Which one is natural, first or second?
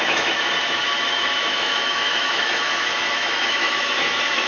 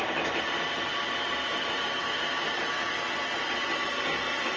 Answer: second